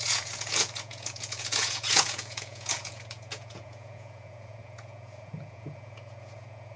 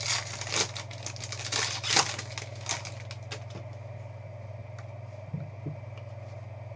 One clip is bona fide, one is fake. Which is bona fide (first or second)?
second